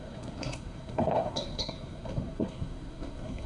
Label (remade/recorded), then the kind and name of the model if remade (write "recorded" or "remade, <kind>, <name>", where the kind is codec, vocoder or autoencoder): remade, codec, SNAC